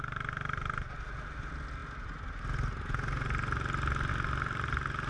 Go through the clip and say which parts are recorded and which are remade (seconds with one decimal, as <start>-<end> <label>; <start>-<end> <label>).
0.0-5.1 recorded